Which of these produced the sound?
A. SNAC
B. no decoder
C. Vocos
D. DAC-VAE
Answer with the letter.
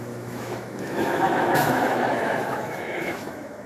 D